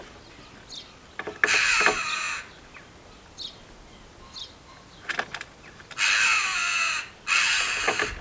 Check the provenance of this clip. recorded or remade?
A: recorded